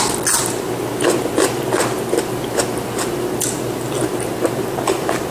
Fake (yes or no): no